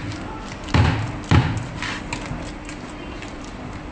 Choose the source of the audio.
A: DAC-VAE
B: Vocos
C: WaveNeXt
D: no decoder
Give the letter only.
D